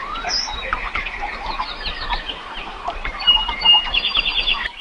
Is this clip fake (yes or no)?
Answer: yes